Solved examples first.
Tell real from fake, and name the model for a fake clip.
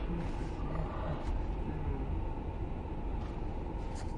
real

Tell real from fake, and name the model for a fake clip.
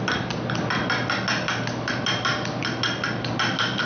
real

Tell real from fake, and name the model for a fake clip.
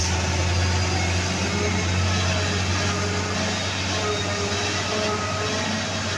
real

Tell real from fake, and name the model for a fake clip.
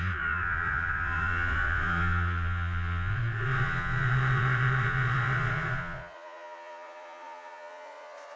fake, vocoder, Vocos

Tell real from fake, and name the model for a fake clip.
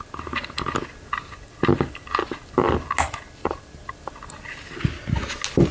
real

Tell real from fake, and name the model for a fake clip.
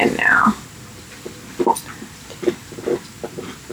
real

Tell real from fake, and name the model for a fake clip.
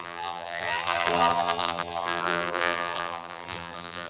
fake, vocoder, BigVGAN v2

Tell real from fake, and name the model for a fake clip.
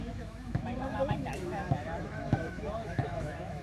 fake, autoencoder, DAC-VAE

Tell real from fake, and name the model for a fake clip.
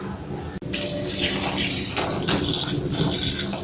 real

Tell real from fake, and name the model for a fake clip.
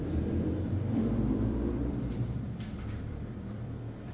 fake, vocoder, BigVGAN v2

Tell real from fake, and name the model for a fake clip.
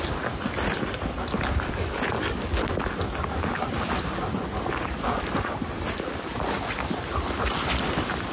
real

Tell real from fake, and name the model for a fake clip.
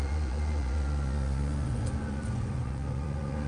fake, vocoder, Vocos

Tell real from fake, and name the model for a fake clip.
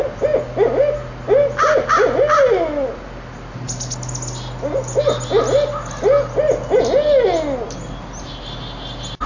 real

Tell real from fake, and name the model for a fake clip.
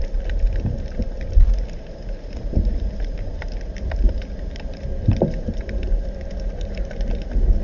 fake, vocoder, BigVGAN v2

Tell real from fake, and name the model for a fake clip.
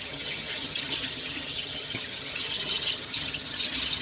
fake, vocoder, HiFi-GAN